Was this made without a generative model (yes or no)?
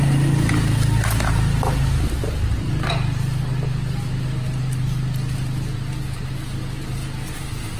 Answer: yes